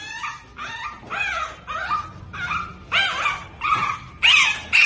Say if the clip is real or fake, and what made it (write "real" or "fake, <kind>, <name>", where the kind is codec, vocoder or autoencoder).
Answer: real